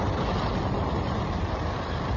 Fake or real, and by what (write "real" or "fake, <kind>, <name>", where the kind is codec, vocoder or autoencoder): real